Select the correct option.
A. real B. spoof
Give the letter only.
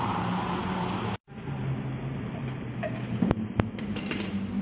B